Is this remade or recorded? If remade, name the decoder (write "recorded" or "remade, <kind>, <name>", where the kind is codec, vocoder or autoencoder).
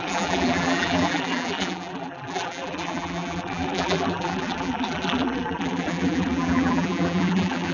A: remade, vocoder, BigVGAN v2